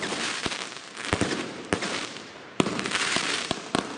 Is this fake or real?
fake